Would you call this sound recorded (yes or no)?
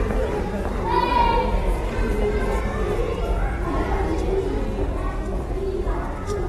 yes